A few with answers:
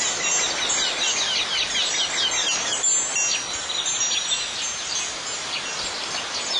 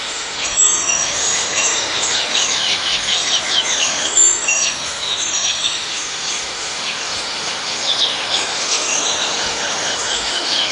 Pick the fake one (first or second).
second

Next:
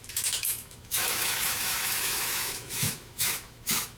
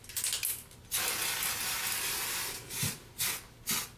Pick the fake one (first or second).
first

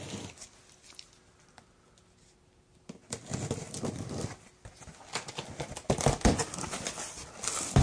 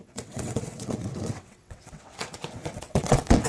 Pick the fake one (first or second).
second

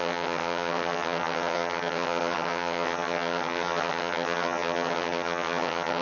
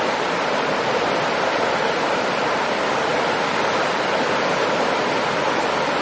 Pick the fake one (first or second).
first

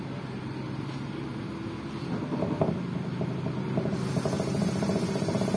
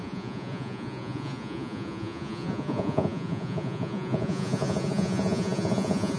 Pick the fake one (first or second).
second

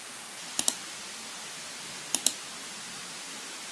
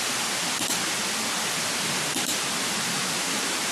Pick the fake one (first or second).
second